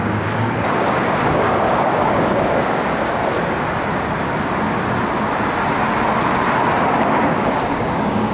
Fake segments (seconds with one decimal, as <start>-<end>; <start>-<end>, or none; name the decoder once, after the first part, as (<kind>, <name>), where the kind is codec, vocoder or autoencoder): 0.0-3.2 (codec, DAC); 7.2-8.3